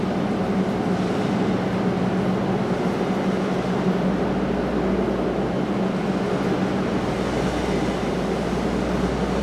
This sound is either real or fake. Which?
real